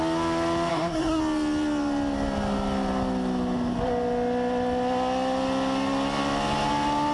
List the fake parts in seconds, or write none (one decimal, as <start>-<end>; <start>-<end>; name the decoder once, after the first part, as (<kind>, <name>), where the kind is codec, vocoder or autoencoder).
0.7-1.2 (codec, SNAC)